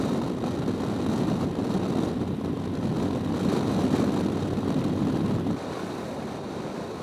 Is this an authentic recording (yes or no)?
yes